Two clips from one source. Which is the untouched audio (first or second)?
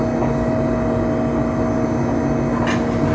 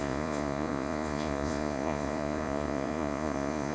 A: first